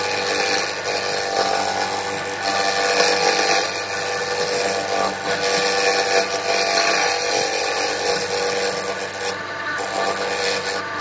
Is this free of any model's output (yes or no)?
yes